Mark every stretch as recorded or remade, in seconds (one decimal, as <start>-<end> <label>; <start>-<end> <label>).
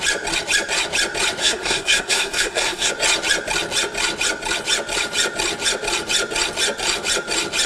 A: 0.0-1.4 recorded; 1.4-2.9 remade; 2.9-7.7 recorded